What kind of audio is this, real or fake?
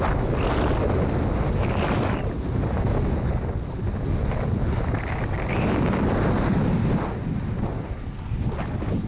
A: real